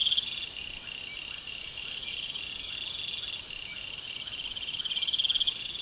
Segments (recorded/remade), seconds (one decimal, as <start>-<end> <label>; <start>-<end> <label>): 0.0-5.8 recorded